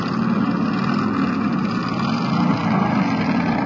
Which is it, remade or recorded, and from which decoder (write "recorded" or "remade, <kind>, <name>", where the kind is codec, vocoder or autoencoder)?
recorded